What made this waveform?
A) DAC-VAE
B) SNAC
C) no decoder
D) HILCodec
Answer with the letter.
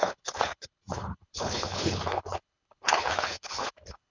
D